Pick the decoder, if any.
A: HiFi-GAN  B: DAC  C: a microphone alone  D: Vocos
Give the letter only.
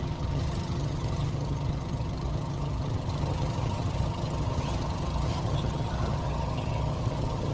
A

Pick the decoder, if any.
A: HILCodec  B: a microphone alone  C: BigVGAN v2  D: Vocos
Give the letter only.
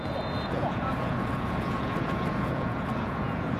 D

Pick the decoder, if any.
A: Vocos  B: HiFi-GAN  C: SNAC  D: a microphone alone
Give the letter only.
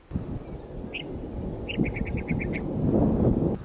D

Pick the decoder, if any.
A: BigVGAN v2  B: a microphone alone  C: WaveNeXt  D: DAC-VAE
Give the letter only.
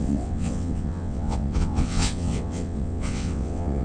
C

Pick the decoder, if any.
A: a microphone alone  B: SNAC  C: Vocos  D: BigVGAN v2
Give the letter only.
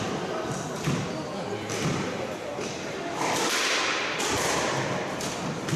D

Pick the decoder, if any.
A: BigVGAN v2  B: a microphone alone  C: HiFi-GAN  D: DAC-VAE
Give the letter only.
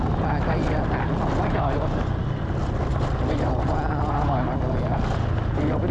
B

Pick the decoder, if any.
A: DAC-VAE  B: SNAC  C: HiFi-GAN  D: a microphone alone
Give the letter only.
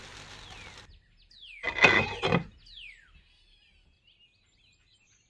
D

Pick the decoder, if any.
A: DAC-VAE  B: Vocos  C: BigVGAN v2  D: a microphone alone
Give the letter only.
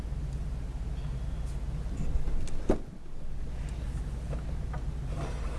D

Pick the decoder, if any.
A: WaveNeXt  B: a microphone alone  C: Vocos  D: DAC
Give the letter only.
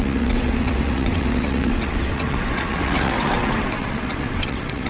A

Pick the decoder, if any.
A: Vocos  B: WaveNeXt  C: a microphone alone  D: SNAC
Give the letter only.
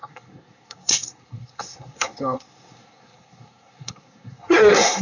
D